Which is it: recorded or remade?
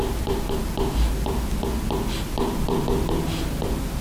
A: recorded